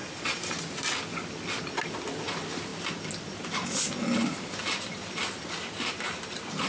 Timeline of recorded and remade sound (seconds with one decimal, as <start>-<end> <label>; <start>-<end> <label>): 0.0-0.6 remade; 0.6-6.7 recorded